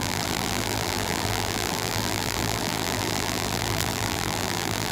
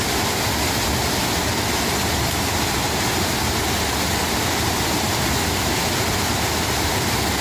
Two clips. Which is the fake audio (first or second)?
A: first